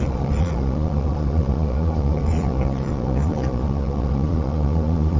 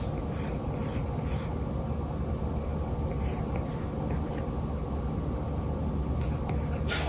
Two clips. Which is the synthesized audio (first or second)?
first